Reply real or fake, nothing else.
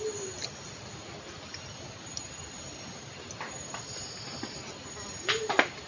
real